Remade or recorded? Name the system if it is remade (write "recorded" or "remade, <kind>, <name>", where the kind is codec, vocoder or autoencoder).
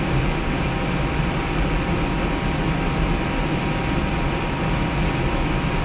recorded